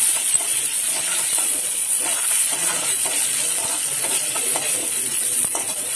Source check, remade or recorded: remade